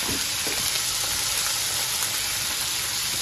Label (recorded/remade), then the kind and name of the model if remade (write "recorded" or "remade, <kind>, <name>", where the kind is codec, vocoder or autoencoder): recorded